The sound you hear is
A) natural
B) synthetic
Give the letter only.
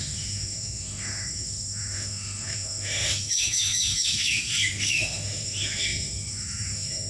B